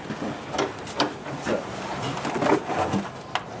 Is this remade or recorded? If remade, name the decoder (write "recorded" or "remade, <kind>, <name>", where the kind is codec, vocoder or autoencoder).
recorded